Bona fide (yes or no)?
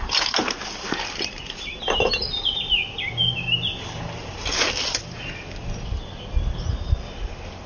yes